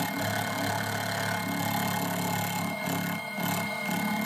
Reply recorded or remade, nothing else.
recorded